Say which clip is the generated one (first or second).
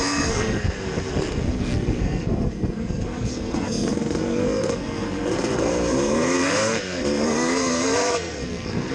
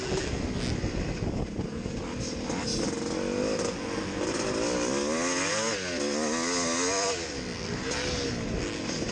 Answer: first